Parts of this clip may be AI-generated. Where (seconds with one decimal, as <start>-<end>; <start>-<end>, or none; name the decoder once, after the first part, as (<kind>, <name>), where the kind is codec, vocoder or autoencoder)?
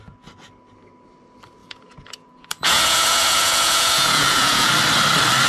1.6-4.7 (vocoder, Vocos)